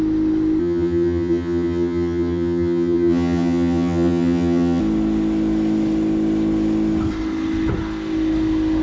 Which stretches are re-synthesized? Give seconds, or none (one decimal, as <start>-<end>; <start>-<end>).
0.6-4.8